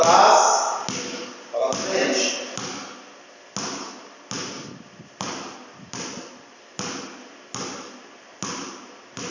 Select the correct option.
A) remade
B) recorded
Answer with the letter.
B